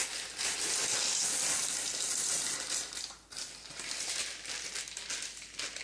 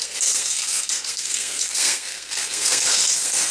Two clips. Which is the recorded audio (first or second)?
first